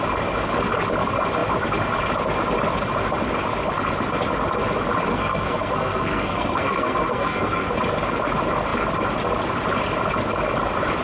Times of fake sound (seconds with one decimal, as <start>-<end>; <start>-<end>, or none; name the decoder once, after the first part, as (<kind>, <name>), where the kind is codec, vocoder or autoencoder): 5.1-7.7 (codec, SNAC)